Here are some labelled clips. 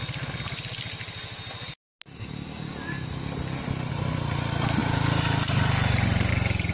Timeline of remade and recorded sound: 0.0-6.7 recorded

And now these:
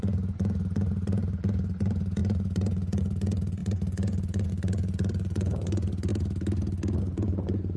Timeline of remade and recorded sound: 0.0-6.1 remade; 6.1-7.0 recorded; 7.0-7.8 remade

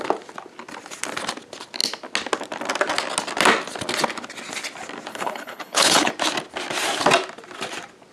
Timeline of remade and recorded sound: 0.0-5.1 recorded; 5.1-6.1 remade; 6.1-8.1 recorded